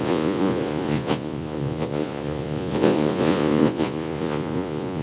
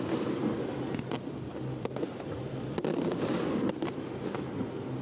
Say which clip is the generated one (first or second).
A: first